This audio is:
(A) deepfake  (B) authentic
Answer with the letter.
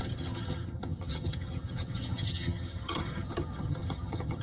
A